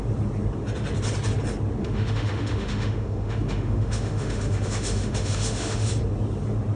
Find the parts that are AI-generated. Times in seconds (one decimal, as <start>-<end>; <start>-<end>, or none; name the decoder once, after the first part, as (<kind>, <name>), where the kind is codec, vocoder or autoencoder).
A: 1.8-5.9 (autoencoder, DAC-VAE)